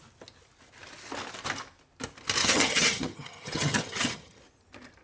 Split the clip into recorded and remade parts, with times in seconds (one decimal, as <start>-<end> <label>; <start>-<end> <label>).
0.0-2.4 recorded; 2.4-4.4 remade; 4.4-5.0 recorded

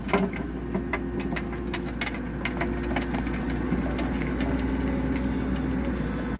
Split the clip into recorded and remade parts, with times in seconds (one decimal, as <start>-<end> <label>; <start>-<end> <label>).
0.0-6.4 recorded

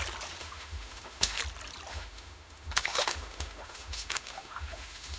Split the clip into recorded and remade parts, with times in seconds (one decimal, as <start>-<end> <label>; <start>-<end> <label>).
0.0-0.4 recorded; 0.4-1.4 remade; 1.4-1.9 recorded; 1.9-5.2 remade

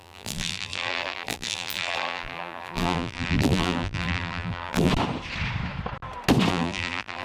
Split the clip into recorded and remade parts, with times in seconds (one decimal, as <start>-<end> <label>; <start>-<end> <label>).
0.0-4.9 remade; 4.9-6.5 recorded; 6.5-7.2 remade

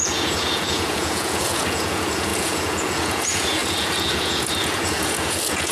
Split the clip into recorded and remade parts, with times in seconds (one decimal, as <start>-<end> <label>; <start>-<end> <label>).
0.0-5.7 remade

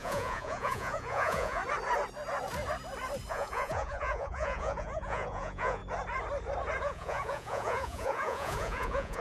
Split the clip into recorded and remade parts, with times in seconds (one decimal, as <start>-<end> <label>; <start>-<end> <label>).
0.0-1.6 remade; 1.6-3.3 recorded; 3.3-5.8 remade; 5.8-6.8 recorded; 6.8-9.2 remade